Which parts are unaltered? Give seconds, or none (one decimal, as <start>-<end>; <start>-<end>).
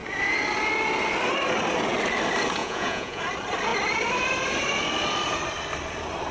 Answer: 0.0-2.6; 3.2-6.3